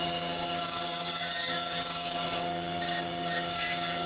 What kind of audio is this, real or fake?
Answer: fake